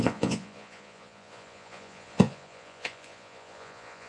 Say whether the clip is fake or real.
fake